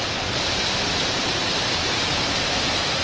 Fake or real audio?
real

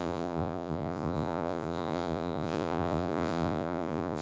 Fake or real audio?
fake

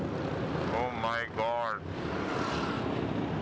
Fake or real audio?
real